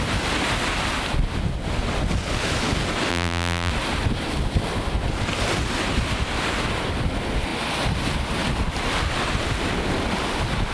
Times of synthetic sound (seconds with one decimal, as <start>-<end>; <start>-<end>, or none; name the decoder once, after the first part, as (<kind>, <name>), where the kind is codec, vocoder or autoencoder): 3.1-3.7 (vocoder, BigVGAN v2)